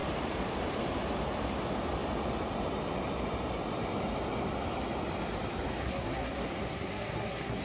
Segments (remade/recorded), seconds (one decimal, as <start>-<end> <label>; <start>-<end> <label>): 0.0-5.8 recorded; 5.8-7.6 remade